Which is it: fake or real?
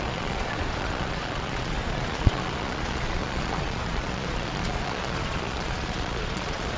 fake